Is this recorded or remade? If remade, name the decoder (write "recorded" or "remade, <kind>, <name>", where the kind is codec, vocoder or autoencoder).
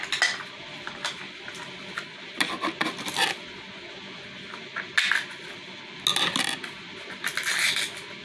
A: recorded